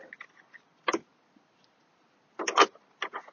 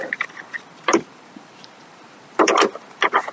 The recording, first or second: first